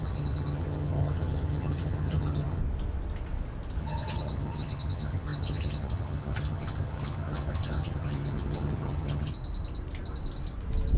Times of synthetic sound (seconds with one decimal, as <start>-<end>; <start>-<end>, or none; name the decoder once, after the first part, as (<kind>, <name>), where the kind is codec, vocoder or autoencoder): 0.0-2.6 (vocoder, HiFi-GAN); 3.8-9.3